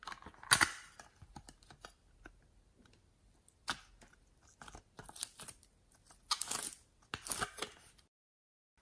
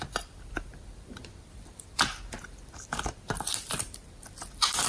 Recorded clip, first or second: first